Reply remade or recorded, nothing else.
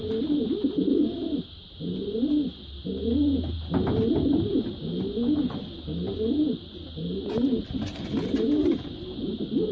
recorded